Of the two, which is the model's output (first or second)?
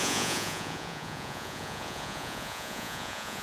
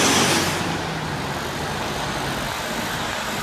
first